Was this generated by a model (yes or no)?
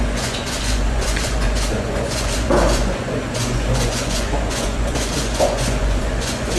yes